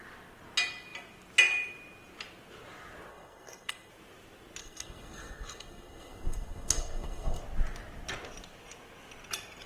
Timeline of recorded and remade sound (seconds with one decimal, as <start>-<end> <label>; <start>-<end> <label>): 0.0-3.1 recorded; 3.1-3.9 remade; 3.9-4.6 recorded; 4.6-7.4 remade; 7.4-9.7 recorded